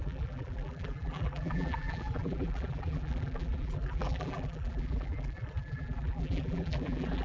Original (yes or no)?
no